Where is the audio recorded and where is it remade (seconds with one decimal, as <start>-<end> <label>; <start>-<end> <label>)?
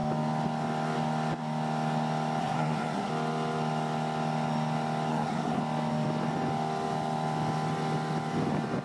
0.0-2.4 recorded; 2.4-3.1 remade; 3.1-5.1 recorded; 5.1-5.6 remade; 5.6-8.8 recorded